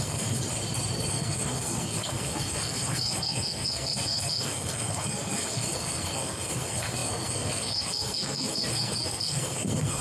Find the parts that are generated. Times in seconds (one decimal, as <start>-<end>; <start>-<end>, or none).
0.0-0.4; 1.1-10.0